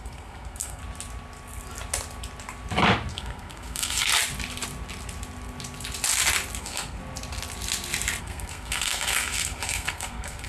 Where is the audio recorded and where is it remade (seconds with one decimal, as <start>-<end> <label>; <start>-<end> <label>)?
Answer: 0.0-0.8 remade; 0.8-3.1 recorded; 3.1-4.1 remade; 4.1-6.6 recorded; 6.6-7.0 remade; 7.0-8.2 recorded; 8.2-10.5 remade